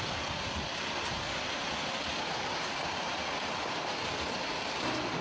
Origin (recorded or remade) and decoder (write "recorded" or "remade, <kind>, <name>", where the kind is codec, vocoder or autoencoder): recorded